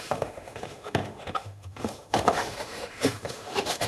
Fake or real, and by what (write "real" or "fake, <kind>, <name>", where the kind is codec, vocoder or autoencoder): fake, autoencoder, DAC-VAE